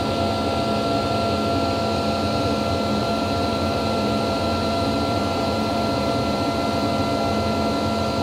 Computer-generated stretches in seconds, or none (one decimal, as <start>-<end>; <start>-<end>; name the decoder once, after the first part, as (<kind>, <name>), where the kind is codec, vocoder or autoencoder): 3.0-6.9 (vocoder, BigVGAN v2)